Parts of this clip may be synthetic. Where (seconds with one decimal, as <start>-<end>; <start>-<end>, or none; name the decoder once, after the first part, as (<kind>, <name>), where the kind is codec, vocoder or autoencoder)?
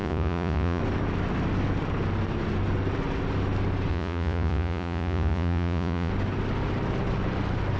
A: 0.0-0.8 (vocoder, Vocos); 3.9-6.1